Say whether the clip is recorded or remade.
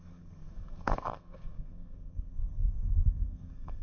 remade